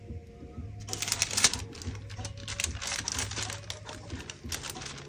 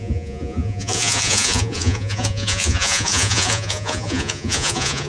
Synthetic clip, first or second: second